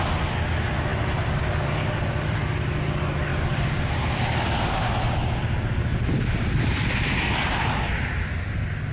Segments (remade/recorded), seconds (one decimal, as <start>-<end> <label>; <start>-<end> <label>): 0.0-0.9 recorded; 0.9-2.6 remade; 2.6-3.3 recorded; 3.3-4.2 remade; 4.2-5.9 recorded; 5.9-6.6 remade; 6.6-8.9 recorded